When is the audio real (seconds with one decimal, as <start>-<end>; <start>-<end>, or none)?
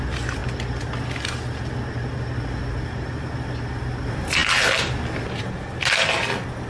0.0-6.7